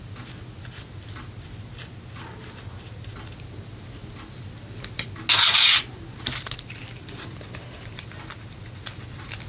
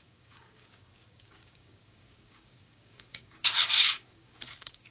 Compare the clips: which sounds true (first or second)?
first